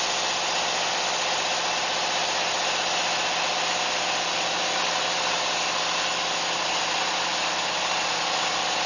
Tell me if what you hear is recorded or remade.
recorded